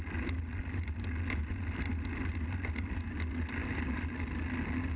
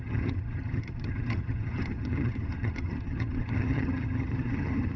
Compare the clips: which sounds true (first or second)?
first